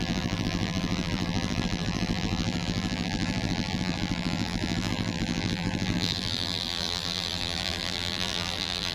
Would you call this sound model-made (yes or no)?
yes